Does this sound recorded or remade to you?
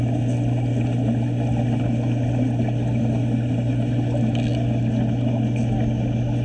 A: recorded